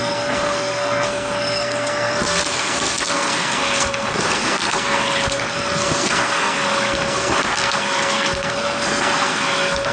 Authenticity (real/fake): fake